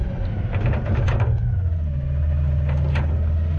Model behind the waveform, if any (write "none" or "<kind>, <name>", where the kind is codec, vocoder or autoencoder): none